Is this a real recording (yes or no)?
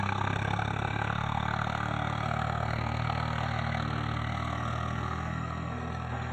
no